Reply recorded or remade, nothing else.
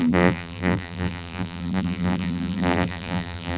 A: remade